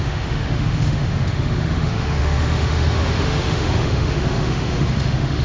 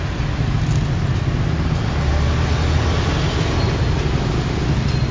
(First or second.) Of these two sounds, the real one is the second